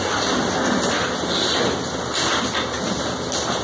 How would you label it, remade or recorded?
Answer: recorded